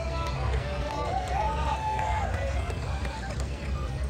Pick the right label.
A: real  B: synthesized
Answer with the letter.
B